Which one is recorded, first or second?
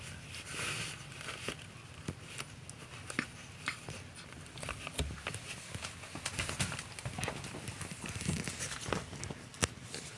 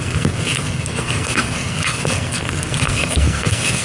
first